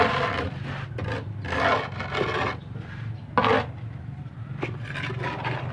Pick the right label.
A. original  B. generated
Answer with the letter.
A